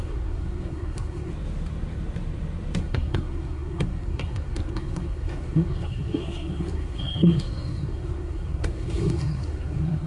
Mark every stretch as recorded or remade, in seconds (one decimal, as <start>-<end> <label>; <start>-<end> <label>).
0.0-1.3 remade; 1.3-2.8 recorded; 2.8-10.1 remade